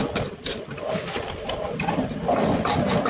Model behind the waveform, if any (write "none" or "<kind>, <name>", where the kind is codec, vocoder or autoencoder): none